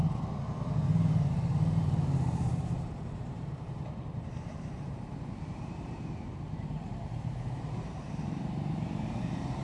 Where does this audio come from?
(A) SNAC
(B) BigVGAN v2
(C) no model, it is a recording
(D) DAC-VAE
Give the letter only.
B